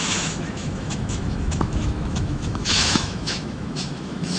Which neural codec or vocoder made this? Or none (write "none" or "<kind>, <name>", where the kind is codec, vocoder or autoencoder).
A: autoencoder, DAC-VAE